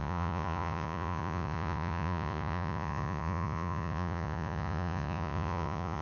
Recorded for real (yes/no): no